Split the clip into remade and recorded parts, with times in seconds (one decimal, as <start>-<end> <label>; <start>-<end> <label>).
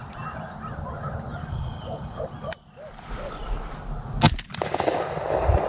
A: 0.0-1.4 recorded; 1.4-2.2 remade; 2.2-5.7 recorded